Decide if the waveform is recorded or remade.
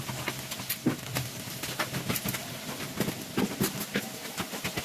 recorded